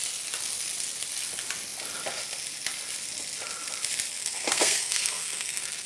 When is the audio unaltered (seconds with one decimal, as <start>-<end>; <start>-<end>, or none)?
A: 0.0-4.2